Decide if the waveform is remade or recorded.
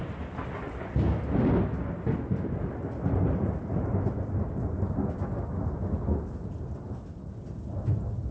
recorded